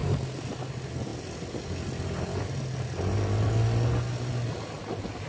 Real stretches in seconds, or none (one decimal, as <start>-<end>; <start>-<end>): 0.0-5.3